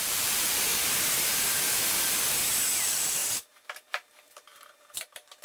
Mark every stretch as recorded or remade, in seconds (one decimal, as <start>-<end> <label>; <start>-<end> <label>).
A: 0.0-0.7 remade; 0.7-2.8 recorded; 2.8-5.4 remade